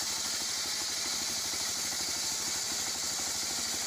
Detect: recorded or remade recorded